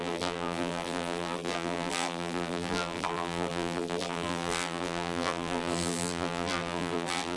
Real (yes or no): no